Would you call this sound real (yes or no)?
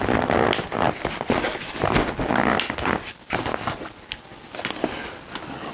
yes